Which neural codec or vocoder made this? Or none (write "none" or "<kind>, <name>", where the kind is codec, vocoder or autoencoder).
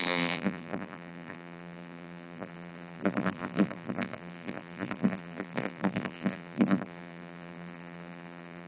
vocoder, BigVGAN v2